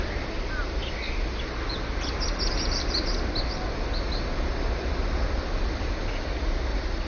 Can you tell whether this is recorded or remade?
recorded